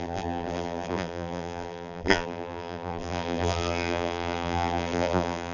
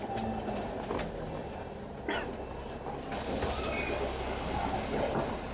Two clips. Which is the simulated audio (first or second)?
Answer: first